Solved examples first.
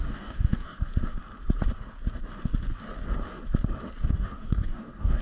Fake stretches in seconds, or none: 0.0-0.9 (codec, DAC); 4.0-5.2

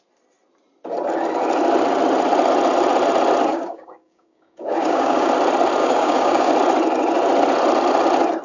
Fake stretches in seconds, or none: 3.5-5.3 (codec, DAC); 5.8-6.5

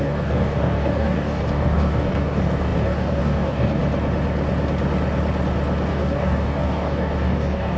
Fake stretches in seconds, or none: 0.0-3.8 (codec, DAC); 5.9-7.8

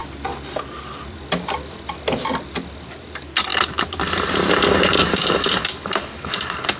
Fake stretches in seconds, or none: 5.1-6.8 (codec, DAC)

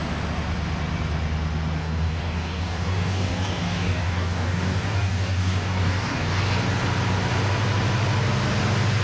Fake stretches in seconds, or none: 1.8-6.4 (codec, DAC)

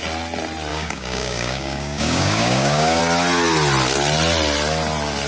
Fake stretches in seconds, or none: 0.7-3.0 (codec, DAC)

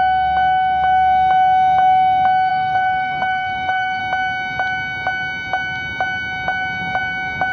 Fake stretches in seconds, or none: 2.5-4.0 (codec, DAC)

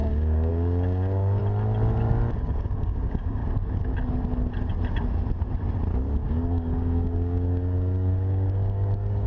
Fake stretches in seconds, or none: 0.0-1.4 (codec, DAC); 2.4-3.4; 6.3-9.3